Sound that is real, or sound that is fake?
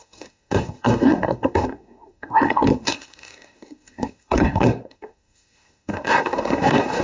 fake